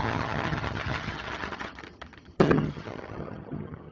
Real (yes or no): no